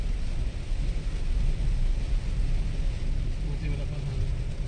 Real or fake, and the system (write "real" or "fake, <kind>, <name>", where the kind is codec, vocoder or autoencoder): real